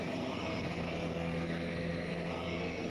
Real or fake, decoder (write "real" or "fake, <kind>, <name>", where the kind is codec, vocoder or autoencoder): fake, codec, SNAC